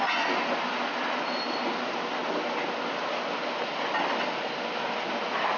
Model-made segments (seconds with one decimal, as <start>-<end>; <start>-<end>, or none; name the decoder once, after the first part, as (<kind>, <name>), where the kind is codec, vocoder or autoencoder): none